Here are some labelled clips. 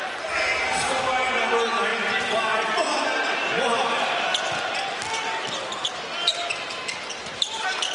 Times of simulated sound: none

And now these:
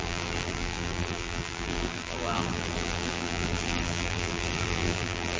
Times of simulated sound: 0.0-5.4 (vocoder, BigVGAN v2)

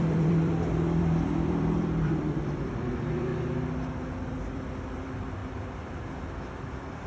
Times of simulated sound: 0.0-3.3 (vocoder, BigVGAN v2); 4.4-5.4; 6.5-7.1

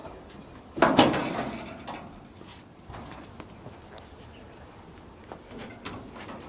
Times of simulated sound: 0.0-1.5 (vocoder, BigVGAN v2); 2.5-5.7

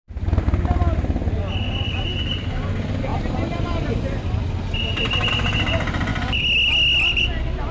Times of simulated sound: none